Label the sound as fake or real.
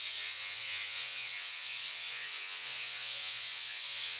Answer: fake